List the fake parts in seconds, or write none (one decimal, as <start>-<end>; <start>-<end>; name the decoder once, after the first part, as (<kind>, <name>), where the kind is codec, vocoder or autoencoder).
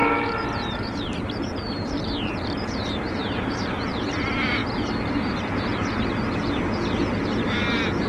0.0-4.0 (vocoder, BigVGAN v2)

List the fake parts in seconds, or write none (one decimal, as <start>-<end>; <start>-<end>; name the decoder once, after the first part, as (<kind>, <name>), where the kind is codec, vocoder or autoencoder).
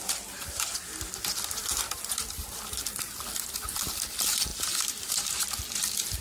4.5-5.4 (vocoder, BigVGAN v2)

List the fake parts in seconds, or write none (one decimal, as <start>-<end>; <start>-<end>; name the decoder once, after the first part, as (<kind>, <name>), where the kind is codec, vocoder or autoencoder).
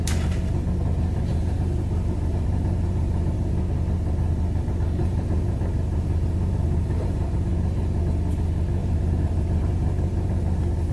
1.3-3.6 (vocoder, BigVGAN v2); 5.0-7.5; 8.8-10.4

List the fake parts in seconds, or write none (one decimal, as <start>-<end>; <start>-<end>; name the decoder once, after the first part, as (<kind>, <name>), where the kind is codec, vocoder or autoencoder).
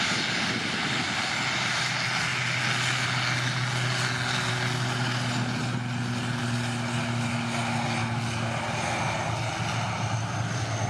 none